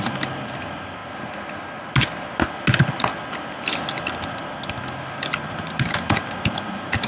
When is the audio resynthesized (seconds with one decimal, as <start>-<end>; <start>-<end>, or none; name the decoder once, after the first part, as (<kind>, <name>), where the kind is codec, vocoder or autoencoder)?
0.0-1.0 (vocoder, BigVGAN v2); 5.3-7.1